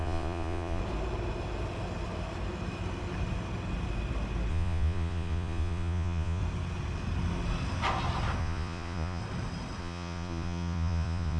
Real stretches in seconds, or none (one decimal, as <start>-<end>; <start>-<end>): 0.8-4.5; 6.4-8.4; 9.2-9.8